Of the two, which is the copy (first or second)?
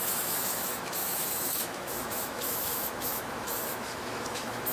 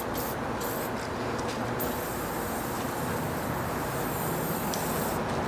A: first